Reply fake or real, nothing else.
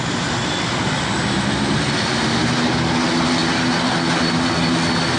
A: real